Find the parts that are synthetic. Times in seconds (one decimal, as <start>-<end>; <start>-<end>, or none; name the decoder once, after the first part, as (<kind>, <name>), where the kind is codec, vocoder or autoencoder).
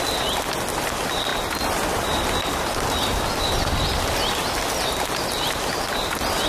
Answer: none